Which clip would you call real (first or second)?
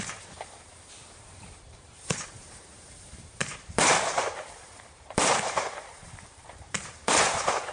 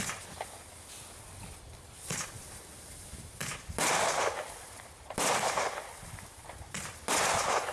second